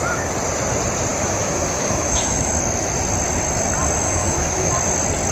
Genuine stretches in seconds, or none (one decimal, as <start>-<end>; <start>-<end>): 0.0-1.1; 2.5-4.0; 4.7-5.3